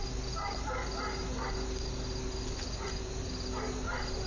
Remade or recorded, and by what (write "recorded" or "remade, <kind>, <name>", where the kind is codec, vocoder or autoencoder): recorded